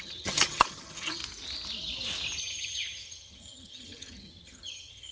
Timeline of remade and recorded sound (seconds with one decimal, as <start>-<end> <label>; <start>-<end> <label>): 0.0-1.2 remade; 1.2-2.4 recorded; 2.4-5.1 remade